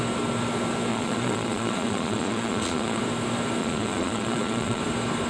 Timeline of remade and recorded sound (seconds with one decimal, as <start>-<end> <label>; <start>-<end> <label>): 0.0-0.9 recorded; 0.9-3.0 remade; 3.0-3.6 recorded; 3.6-4.8 remade; 4.8-5.3 recorded